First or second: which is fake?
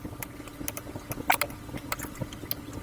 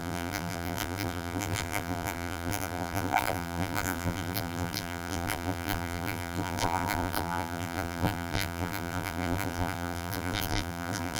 second